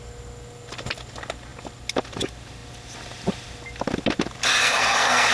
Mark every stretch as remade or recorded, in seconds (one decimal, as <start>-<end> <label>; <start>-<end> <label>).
0.0-4.6 recorded; 4.6-5.3 remade